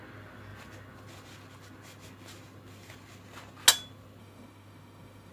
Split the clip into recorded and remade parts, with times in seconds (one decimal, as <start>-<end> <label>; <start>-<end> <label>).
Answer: 0.0-4.2 recorded; 4.2-5.3 remade

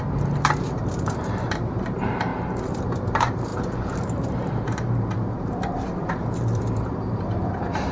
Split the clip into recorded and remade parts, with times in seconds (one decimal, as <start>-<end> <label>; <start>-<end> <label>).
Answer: 0.0-2.3 remade; 2.3-2.8 recorded; 2.8-7.9 remade

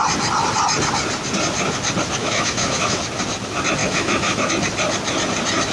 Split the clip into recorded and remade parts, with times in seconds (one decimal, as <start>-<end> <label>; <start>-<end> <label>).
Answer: 0.0-2.2 recorded; 2.2-3.0 remade; 3.0-3.8 recorded; 3.8-4.5 remade; 4.5-5.7 recorded

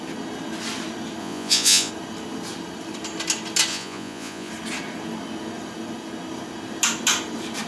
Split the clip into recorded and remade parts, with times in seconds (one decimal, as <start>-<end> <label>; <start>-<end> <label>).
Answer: 0.0-1.2 recorded; 1.2-1.9 remade; 1.9-3.7 recorded; 3.7-4.5 remade; 4.5-7.7 recorded

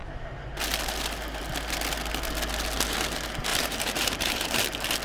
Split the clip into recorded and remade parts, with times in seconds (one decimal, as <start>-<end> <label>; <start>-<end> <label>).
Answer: 0.0-3.5 recorded; 3.5-4.6 remade; 4.6-5.0 recorded

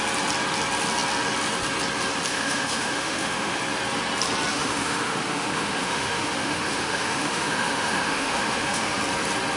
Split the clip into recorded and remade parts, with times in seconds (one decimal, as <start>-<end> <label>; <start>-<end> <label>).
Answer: 0.0-2.3 recorded; 2.3-3.6 remade; 3.6-4.5 recorded; 4.5-9.0 remade; 9.0-9.6 recorded

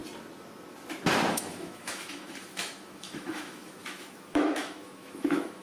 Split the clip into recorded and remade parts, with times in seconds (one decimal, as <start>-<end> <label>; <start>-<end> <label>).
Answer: 0.0-1.3 recorded; 1.3-5.6 remade

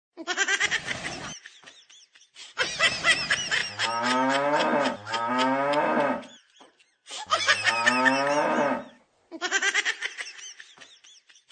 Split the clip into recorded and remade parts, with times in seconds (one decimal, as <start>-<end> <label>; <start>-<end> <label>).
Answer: 0.0-11.5 recorded